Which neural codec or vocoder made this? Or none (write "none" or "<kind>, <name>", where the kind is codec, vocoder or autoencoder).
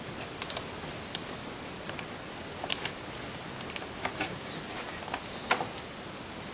none